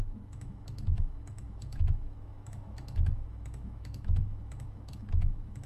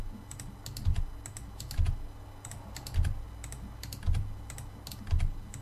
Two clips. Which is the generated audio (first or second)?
first